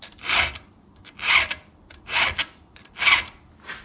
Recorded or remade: recorded